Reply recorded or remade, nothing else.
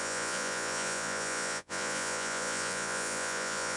remade